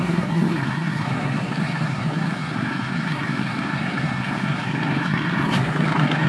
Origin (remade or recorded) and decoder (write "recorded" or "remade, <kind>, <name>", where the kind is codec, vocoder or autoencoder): remade, codec, SNAC